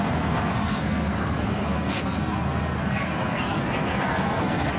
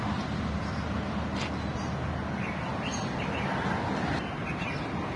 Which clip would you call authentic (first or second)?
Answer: second